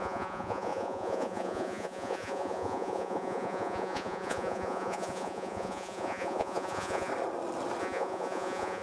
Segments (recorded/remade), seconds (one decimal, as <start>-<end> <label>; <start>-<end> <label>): 0.0-7.1 remade; 7.1-7.8 recorded; 7.8-8.8 remade